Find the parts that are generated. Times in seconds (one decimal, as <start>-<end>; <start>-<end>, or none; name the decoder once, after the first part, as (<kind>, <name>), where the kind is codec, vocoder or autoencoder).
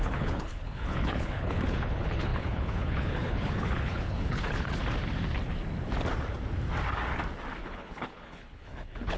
0.0-4.8 (codec, HILCodec); 7.6-9.2